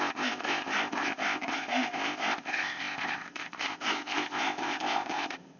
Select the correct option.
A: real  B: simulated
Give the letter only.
B